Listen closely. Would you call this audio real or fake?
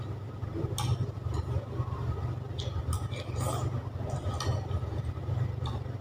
real